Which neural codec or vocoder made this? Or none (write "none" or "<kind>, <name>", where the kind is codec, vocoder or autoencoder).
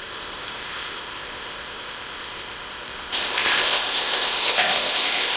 codec, ZipCodec